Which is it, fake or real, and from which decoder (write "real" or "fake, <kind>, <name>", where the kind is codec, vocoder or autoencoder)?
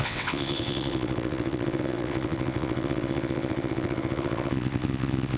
fake, vocoder, WaveNeXt